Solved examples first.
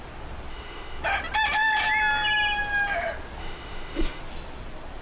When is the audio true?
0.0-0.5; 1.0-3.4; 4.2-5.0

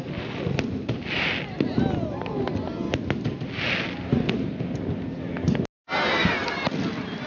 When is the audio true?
0.0-7.3

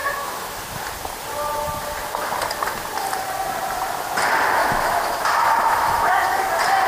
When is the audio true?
0.6-4.6; 6.5-6.9

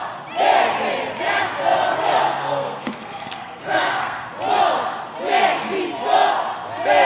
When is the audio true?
0.0-2.2; 4.3-7.0